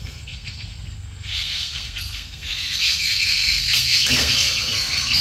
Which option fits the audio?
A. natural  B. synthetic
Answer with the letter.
B